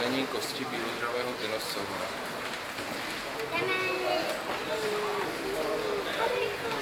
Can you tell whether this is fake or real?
real